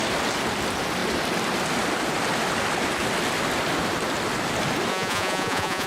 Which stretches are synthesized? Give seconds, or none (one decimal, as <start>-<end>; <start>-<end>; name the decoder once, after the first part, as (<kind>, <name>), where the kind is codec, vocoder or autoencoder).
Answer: 4.9-5.9 (vocoder, Vocos)